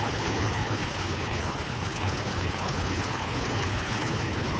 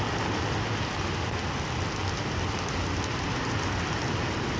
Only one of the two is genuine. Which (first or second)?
second